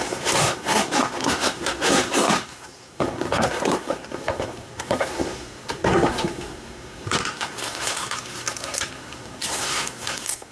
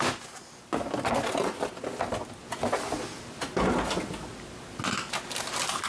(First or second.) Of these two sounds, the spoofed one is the first